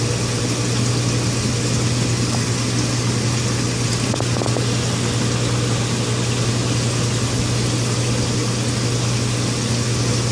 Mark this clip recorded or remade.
recorded